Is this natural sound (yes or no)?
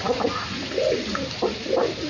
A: yes